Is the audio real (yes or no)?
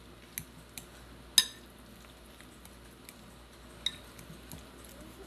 yes